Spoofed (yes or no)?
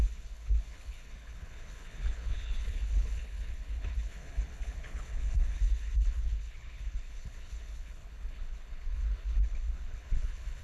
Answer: yes